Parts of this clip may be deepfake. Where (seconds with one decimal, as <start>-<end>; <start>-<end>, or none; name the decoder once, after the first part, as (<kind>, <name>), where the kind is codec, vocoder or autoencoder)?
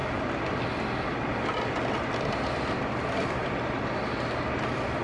none